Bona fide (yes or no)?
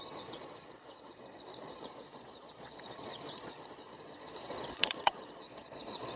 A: no